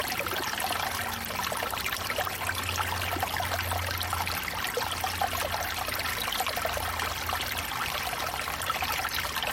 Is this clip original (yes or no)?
yes